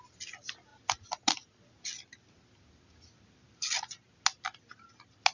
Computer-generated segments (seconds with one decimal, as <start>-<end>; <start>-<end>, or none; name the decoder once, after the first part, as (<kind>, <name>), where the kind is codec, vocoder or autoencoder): none